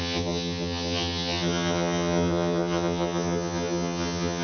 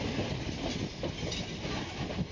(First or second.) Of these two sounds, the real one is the second